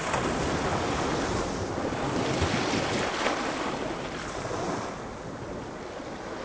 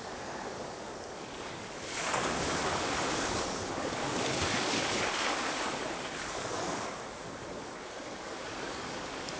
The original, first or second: first